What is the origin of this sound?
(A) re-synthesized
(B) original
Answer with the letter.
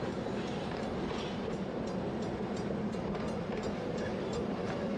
A